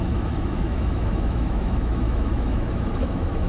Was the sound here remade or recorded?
remade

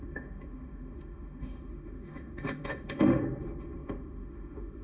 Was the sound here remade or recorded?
remade